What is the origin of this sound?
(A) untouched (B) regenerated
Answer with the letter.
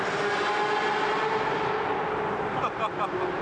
A